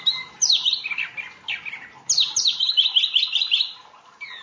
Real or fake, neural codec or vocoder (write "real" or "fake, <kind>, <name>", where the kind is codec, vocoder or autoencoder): real